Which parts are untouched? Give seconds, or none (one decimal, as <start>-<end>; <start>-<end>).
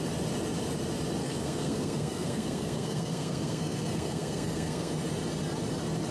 0.0-1.2; 4.9-6.1